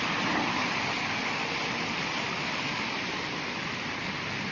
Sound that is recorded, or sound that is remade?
recorded